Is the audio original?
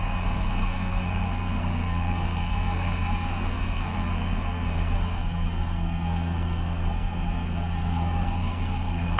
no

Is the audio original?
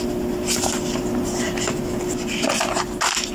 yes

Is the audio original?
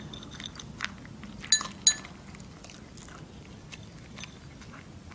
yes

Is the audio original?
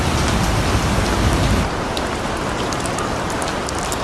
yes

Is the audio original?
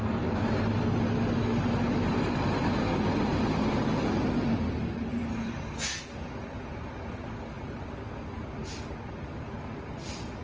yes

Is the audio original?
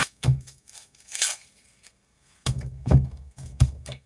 no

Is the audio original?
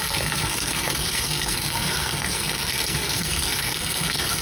no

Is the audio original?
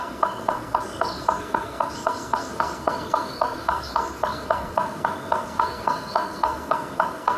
no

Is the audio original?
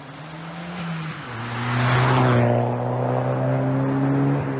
yes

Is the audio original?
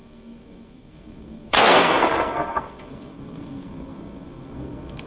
no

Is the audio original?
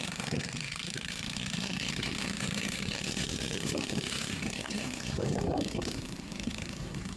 no